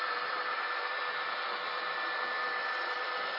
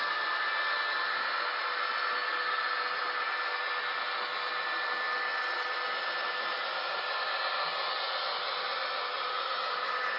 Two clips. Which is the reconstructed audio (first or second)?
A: first